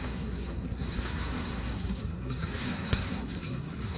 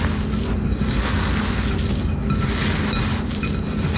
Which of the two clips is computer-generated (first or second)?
first